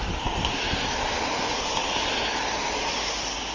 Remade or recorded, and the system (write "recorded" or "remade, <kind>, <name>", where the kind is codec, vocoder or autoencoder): recorded